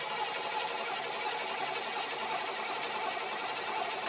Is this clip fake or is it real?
real